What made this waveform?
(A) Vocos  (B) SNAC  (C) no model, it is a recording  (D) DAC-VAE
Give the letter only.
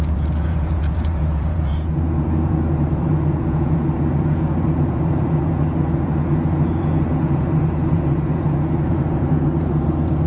A